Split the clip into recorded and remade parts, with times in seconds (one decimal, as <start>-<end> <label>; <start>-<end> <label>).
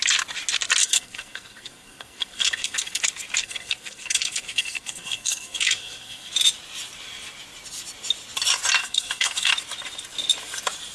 0.0-0.8 recorded; 0.8-3.0 remade; 3.0-3.4 recorded; 3.4-6.3 remade; 6.3-8.8 recorded; 8.8-9.5 remade; 9.5-10.9 recorded